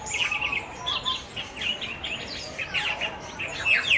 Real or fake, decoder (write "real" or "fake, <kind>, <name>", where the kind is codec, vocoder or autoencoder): real